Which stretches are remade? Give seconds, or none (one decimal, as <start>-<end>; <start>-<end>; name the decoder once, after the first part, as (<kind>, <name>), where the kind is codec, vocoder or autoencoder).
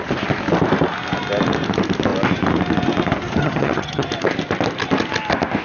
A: 3.4-4.1 (vocoder, HiFi-GAN)